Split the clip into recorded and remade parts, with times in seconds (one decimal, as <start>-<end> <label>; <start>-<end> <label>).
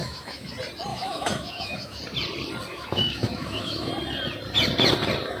0.0-0.5 remade; 0.5-0.9 recorded; 0.9-2.0 remade; 2.0-2.7 recorded; 2.7-3.9 remade; 3.9-5.4 recorded